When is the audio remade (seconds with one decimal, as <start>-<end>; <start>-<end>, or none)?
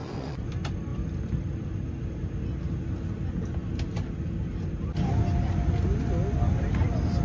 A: 0.0-0.5